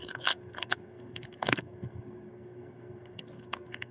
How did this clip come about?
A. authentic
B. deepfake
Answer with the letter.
B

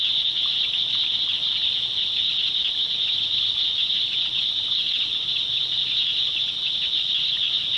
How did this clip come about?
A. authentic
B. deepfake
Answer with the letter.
A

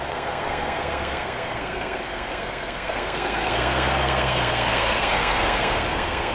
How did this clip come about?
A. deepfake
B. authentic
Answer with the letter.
A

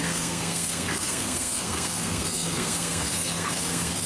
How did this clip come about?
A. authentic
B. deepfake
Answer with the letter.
B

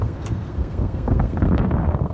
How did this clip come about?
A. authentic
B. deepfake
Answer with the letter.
B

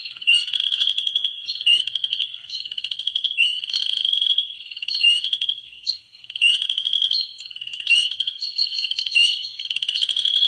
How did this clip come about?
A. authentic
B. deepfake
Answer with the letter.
B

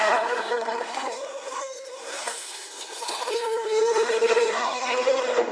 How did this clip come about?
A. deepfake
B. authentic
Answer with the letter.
A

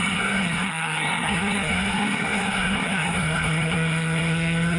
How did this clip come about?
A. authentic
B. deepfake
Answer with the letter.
B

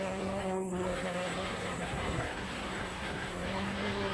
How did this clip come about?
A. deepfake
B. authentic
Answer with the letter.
A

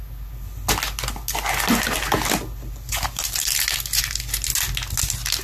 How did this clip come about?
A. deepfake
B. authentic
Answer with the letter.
B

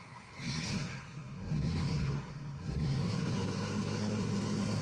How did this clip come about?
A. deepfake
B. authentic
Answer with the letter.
A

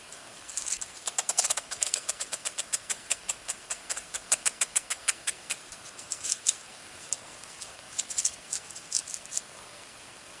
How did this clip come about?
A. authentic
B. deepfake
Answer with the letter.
B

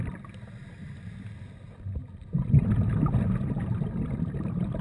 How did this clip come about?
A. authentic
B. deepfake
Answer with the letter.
A